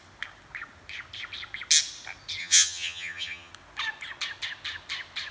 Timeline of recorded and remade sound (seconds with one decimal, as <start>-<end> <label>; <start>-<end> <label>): 0.0-2.4 recorded; 2.4-3.5 remade; 3.5-5.3 recorded